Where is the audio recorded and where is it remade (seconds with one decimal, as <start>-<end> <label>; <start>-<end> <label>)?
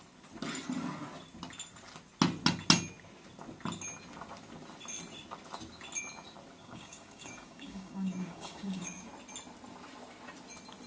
0.0-6.6 recorded; 6.6-9.1 remade; 9.1-10.9 recorded